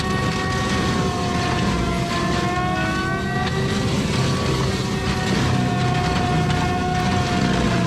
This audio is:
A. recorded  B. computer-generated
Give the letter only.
A